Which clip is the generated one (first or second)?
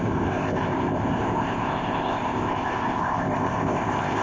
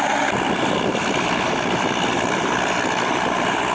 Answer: first